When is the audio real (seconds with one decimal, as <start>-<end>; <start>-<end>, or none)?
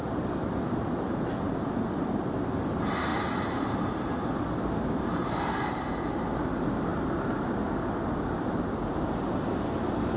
0.0-10.2